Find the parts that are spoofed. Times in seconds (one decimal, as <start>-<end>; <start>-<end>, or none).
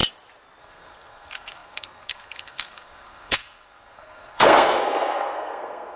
0.6-6.0